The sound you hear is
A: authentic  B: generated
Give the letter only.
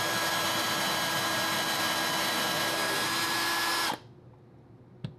A